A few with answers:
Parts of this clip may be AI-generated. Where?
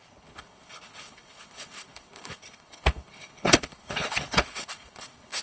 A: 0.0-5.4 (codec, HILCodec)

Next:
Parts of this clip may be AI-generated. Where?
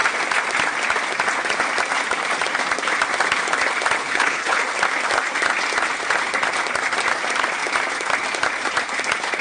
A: 4.0-4.6 (codec, HILCodec)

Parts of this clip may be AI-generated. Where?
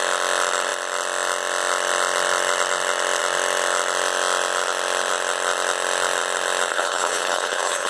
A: 6.7-7.9 (codec, HILCodec)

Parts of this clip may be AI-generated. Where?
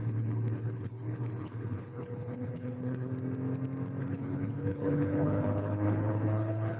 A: 0.0-3.1 (codec, HILCodec); 4.0-6.8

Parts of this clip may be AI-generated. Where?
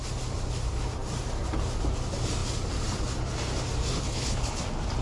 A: 3.9-4.6 (codec, HILCodec)